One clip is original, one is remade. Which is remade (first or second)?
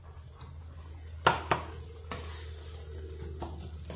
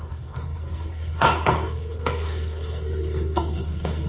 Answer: second